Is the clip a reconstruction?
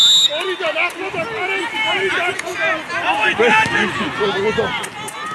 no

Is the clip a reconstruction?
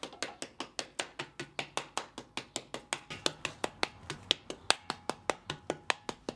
no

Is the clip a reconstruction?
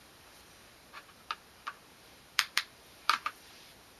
yes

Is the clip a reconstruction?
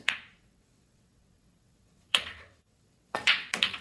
yes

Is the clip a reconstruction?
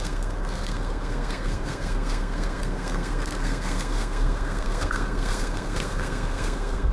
yes